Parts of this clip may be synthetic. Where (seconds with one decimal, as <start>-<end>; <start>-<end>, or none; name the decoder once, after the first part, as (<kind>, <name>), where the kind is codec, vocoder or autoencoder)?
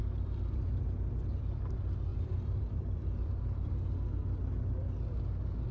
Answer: 0.0-1.7 (vocoder, BigVGAN v2); 2.1-3.3